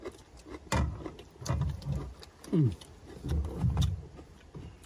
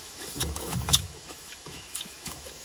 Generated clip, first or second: second